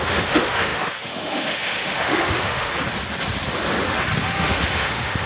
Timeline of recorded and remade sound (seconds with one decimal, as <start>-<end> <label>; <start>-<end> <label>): 0.0-2.7 remade; 2.7-4.2 recorded; 4.2-5.3 remade